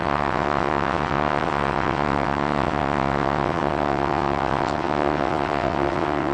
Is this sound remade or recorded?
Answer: remade